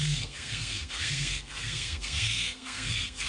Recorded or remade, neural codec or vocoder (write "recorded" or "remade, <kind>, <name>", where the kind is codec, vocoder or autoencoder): remade, codec, SNAC